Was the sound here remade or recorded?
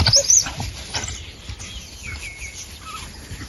recorded